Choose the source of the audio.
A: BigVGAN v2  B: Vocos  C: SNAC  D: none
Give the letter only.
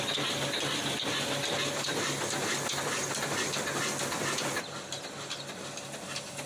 D